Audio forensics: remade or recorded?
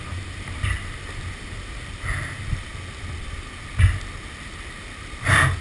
recorded